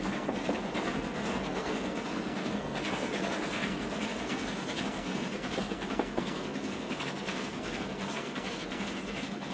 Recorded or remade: remade